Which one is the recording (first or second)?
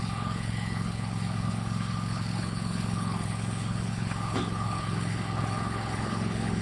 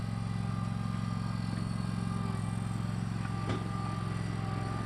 second